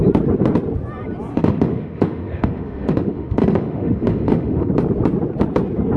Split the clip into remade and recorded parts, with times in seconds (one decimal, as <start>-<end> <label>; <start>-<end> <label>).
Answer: 0.0-1.3 recorded; 1.3-4.7 remade; 4.7-6.0 recorded